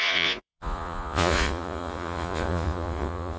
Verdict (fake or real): fake